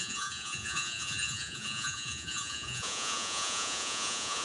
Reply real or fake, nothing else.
fake